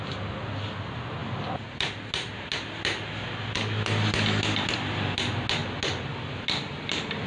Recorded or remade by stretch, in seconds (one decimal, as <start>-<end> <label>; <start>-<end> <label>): 0.0-7.3 recorded